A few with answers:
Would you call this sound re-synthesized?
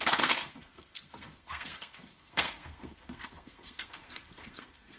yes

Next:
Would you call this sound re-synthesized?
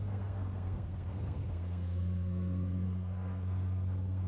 yes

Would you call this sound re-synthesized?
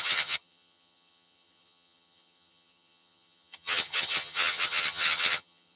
yes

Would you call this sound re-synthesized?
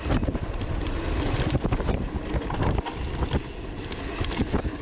no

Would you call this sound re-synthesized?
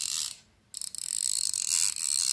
no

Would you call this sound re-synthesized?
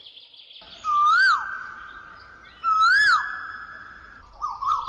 no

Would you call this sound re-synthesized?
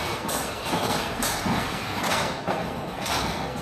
yes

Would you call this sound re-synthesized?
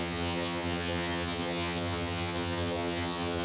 yes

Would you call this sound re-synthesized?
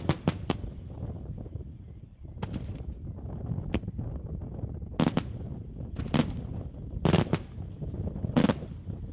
no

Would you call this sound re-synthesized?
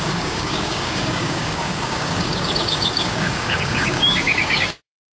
yes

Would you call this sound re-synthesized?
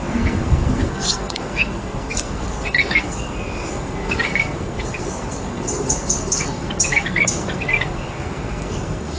yes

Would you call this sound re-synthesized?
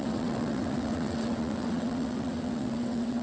yes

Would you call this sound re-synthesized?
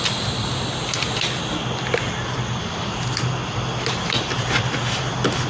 no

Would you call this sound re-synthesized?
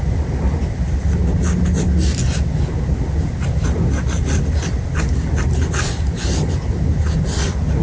no